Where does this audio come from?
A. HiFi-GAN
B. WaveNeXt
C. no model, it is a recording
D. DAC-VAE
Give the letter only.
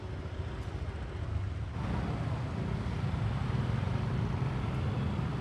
C